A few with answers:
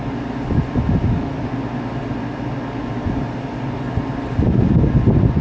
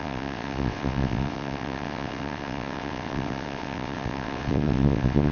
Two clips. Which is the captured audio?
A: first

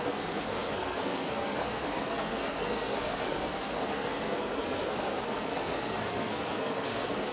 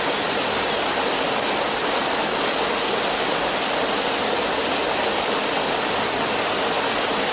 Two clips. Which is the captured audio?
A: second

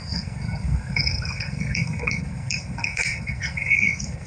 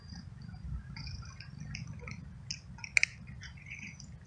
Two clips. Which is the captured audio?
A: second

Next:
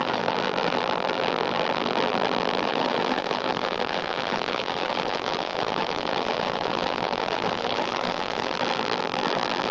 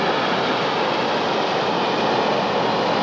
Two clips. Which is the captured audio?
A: second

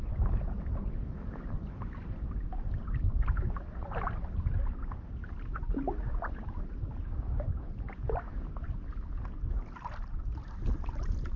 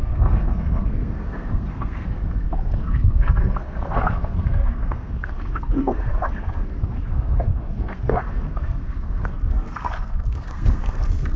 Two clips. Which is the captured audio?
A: first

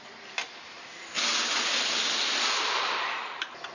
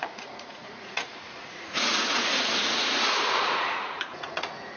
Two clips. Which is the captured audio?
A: first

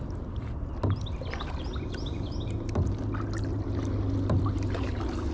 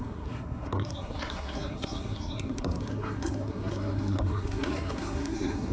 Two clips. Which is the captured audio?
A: first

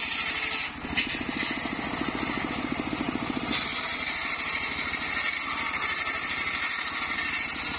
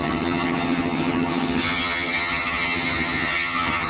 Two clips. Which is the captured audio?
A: first